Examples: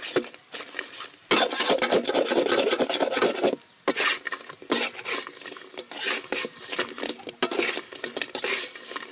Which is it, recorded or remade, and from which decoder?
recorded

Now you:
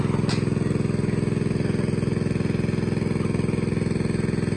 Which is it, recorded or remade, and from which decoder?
recorded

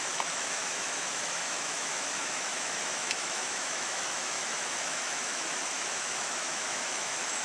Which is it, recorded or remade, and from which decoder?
remade, autoencoder, DAC-VAE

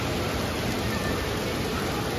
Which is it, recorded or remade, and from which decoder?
recorded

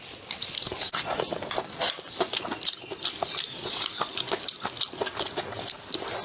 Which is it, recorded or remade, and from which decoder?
recorded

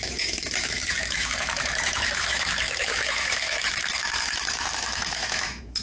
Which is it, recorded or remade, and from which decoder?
remade, autoencoder, DAC-VAE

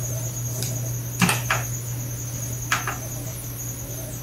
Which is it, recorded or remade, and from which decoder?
recorded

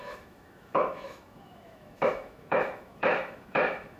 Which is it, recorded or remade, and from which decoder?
remade, autoencoder, DAC-VAE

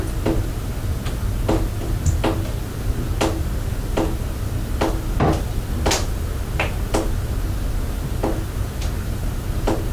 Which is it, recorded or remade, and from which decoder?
recorded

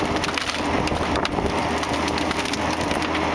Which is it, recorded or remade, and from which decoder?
recorded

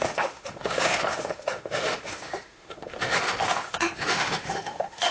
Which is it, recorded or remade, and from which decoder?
remade, autoencoder, DAC-VAE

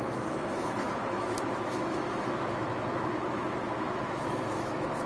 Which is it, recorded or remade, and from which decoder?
remade, autoencoder, DAC-VAE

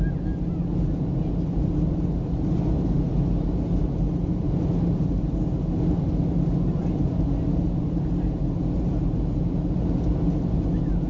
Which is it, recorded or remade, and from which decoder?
recorded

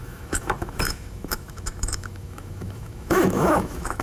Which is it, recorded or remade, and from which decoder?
remade, autoencoder, DAC-VAE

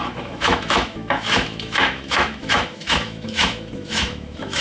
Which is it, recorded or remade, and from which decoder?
remade, autoencoder, DAC-VAE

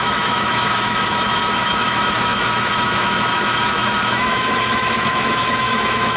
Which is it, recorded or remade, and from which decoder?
remade, autoencoder, DAC-VAE